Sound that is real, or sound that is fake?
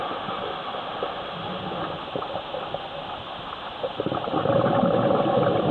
real